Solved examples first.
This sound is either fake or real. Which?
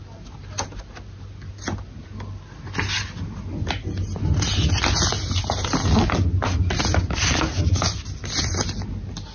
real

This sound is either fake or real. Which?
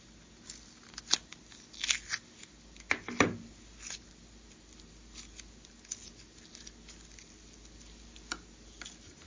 real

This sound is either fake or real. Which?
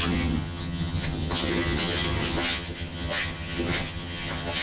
fake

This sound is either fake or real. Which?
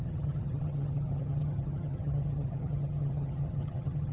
fake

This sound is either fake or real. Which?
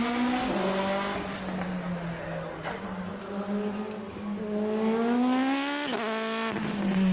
real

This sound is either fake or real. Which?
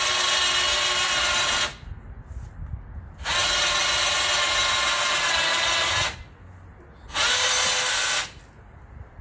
real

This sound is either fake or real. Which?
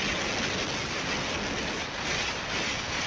real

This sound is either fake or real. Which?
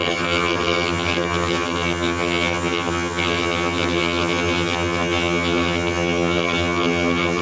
fake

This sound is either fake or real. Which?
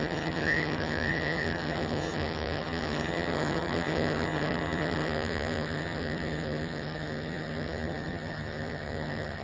fake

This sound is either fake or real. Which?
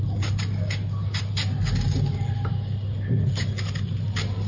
real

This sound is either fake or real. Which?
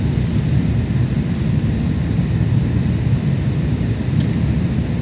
real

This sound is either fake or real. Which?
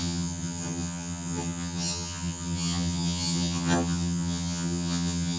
fake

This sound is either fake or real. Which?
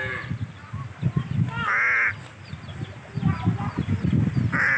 real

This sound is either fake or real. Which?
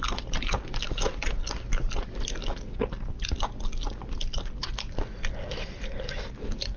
real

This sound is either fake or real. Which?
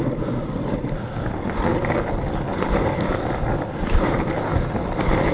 real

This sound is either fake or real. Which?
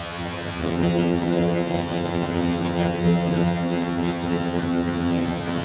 fake